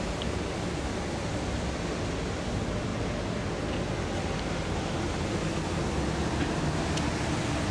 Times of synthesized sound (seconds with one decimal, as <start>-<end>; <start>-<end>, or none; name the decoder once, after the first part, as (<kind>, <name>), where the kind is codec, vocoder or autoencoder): none